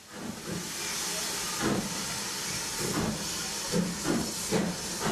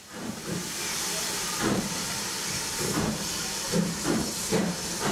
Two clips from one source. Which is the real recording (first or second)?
first